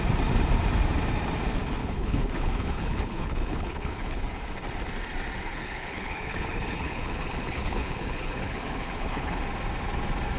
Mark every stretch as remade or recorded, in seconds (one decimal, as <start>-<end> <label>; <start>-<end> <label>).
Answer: 0.0-1.8 recorded; 1.8-4.2 remade; 4.2-5.5 recorded; 5.5-9.4 remade; 9.4-10.4 recorded